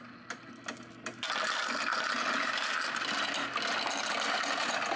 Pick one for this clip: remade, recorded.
recorded